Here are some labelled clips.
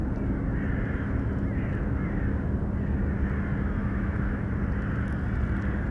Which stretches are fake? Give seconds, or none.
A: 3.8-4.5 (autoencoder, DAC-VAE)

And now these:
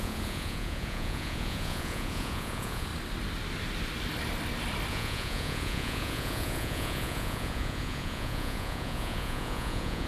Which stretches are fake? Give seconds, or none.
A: 0.0-2.9 (vocoder, Vocos); 4.9-10.1

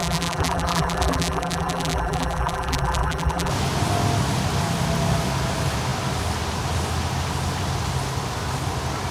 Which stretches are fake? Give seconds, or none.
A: 0.0-3.5 (vocoder, BigVGAN v2)

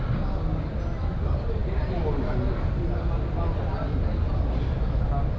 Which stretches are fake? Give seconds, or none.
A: none

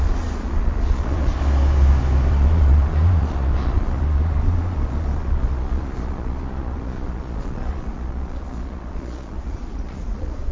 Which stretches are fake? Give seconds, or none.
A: 0.0-1.3 (vocoder, Vocos); 2.3-10.5

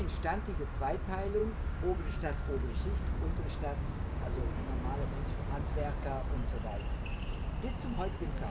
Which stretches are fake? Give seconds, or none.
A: 1.4-4.5 (codec, DAC)